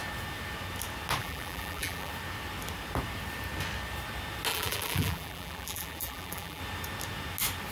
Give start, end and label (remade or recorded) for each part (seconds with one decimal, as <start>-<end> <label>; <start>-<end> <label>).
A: 0.0-1.2 recorded; 1.2-2.1 remade; 2.1-4.5 recorded; 4.5-6.6 remade; 6.6-7.7 recorded